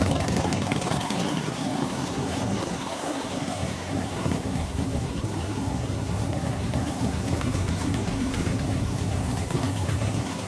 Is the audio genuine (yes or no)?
no